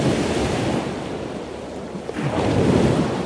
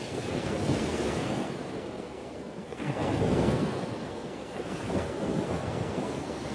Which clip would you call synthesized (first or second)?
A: second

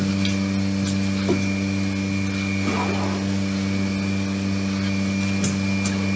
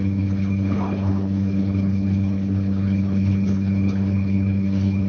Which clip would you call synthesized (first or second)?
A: second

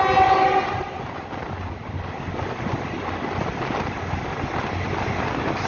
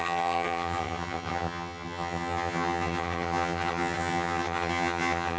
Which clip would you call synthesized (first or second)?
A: second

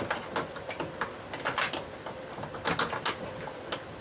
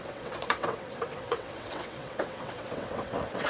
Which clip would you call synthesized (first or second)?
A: second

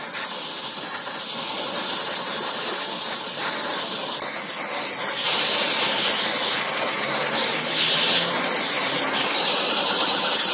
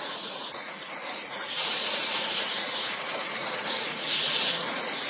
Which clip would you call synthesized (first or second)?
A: second